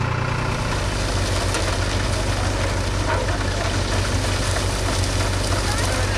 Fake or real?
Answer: real